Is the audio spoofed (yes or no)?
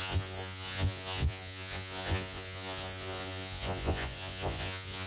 yes